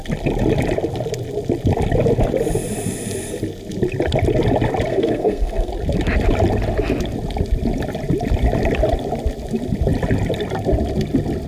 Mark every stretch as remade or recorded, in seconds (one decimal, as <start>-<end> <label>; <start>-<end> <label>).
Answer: 0.0-4.9 recorded; 4.9-5.7 remade; 5.7-11.5 recorded